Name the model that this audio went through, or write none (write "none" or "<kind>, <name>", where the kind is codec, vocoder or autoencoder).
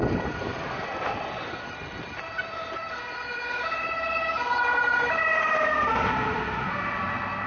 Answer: none